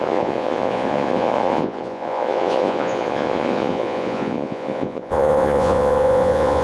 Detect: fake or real fake